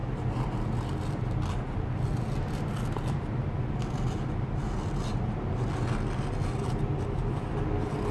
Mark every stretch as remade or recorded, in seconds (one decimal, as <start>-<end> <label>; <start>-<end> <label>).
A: 0.0-0.6 remade; 0.6-8.1 recorded